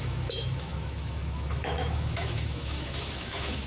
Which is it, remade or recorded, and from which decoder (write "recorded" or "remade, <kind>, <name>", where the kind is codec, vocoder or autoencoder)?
remade, autoencoder, DAC-VAE